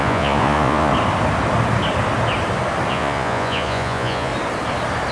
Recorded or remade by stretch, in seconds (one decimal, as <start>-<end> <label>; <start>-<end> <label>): 0.0-0.9 remade; 0.9-2.9 recorded; 2.9-4.3 remade; 4.3-5.1 recorded